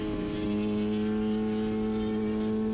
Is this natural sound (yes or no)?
yes